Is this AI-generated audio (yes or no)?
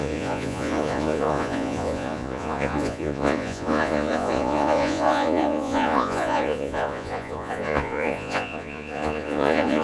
yes